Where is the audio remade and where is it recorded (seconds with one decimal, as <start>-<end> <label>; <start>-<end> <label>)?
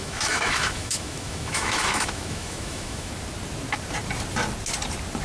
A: 0.0-3.1 remade; 3.1-5.2 recorded